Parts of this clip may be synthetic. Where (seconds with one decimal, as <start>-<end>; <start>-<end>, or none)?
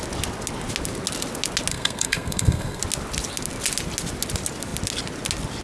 1.7-2.8